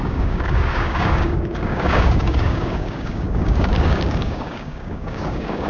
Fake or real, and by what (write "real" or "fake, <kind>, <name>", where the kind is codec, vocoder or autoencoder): fake, codec, DAC